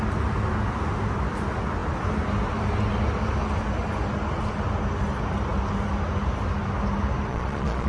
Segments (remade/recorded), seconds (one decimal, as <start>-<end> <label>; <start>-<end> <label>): 0.0-7.3 recorded; 7.3-7.9 remade